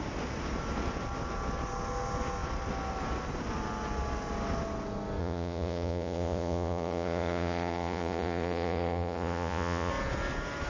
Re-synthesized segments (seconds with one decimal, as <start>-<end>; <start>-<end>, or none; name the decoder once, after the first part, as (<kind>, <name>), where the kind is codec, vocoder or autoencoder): 5.2-9.9 (vocoder, Vocos)